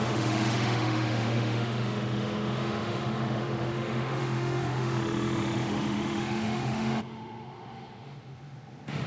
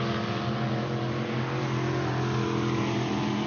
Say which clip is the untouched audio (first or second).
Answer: second